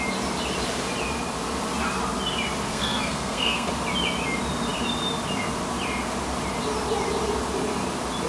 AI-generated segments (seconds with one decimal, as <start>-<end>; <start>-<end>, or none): 2.7-3.7